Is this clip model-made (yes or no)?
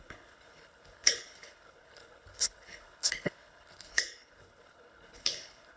yes